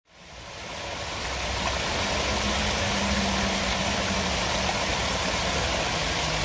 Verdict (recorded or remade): recorded